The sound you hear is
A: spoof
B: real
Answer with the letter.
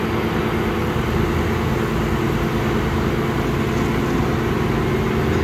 B